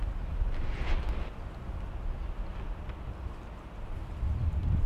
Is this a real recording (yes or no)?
yes